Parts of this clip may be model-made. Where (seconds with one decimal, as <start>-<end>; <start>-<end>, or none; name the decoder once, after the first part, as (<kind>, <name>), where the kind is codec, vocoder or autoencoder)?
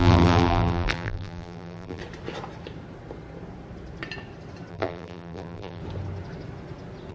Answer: 0.0-2.0 (vocoder, BigVGAN v2); 4.7-5.8